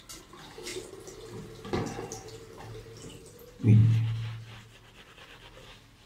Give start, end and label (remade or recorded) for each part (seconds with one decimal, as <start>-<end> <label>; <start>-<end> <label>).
0.0-6.1 recorded